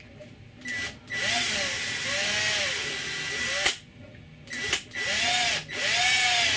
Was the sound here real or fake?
real